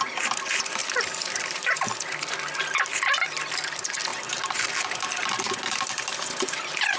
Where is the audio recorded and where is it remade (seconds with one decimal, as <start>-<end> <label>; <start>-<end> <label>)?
0.0-0.8 recorded; 0.8-1.7 remade; 1.7-7.0 recorded